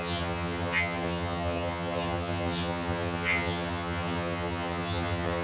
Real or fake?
fake